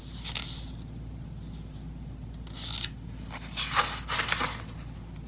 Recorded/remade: recorded